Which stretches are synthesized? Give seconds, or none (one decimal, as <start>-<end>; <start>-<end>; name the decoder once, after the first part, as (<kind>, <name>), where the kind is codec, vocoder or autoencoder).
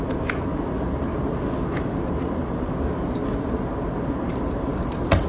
0.0-1.1 (vocoder, BigVGAN v2); 1.8-3.2; 4.5-5.3